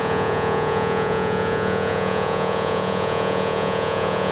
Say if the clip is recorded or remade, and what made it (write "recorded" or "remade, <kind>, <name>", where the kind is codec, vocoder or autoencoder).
remade, vocoder, Vocos